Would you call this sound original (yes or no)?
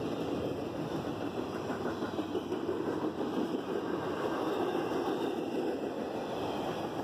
yes